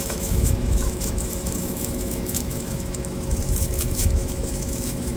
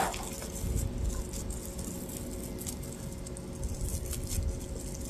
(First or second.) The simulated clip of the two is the first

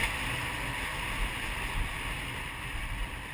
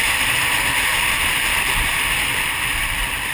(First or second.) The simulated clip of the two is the second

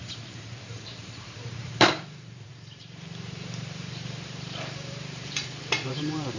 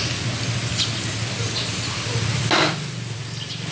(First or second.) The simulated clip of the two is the first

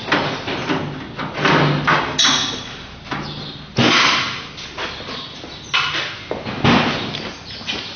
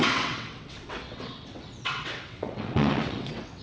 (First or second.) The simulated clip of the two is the second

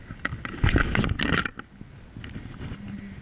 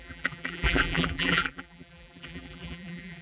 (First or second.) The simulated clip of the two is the second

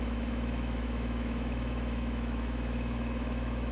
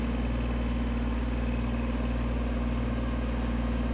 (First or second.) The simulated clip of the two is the first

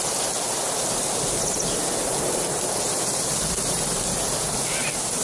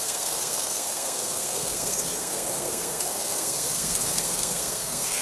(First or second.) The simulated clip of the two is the second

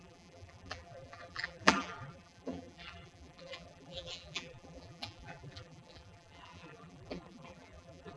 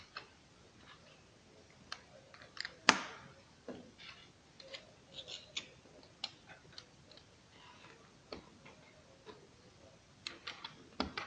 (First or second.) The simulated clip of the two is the first